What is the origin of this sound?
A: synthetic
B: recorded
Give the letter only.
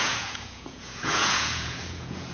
A